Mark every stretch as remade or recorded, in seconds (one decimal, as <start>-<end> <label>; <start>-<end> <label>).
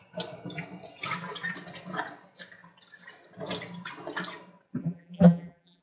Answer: 0.0-4.8 recorded; 4.8-5.8 remade